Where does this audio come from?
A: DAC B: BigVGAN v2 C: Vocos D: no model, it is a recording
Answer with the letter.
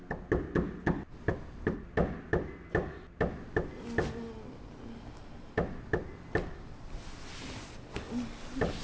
D